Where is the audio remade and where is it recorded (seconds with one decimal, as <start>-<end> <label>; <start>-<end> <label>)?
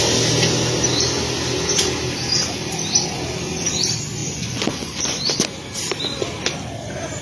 0.0-4.2 recorded; 4.2-5.5 remade; 5.5-7.2 recorded